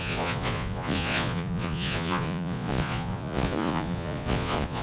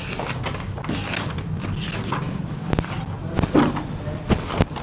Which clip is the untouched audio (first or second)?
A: second